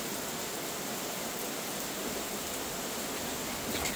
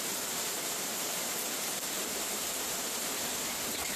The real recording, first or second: first